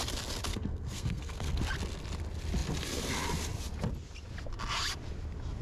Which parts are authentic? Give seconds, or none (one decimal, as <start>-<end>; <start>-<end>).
0.0-0.5; 1.5-5.6

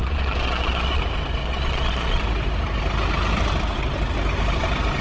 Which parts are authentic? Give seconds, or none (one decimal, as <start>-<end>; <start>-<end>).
1.0-1.4; 2.2-5.0